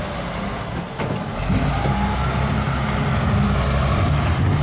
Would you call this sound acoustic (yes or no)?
yes